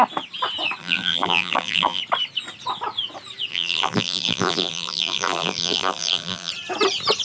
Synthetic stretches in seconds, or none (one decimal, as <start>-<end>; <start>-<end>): 0.8-2.0; 3.5-6.5

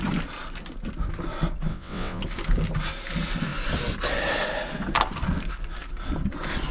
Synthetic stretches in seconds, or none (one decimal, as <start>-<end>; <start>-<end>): 1.7-2.2

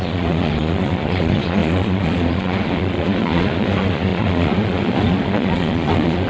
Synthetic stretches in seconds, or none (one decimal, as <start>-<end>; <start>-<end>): 0.0-6.3

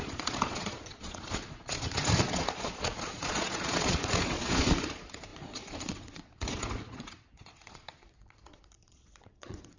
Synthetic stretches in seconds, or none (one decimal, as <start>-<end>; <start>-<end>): 0.0-9.8

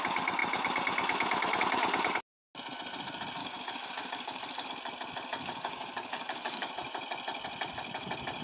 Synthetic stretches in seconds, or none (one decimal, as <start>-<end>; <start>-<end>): 3.4-4.7; 5.3-6.7

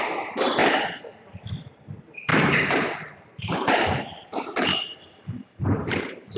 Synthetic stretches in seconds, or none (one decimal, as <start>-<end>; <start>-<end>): 0.0-0.6; 1.1-6.4

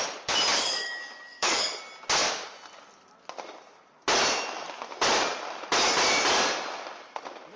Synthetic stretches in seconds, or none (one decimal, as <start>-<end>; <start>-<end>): 0.5-1.8